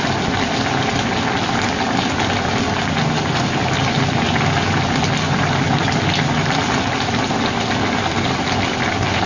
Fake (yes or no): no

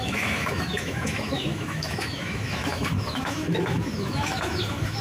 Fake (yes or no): yes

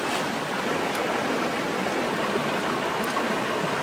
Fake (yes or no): no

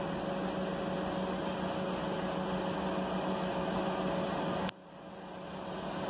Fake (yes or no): no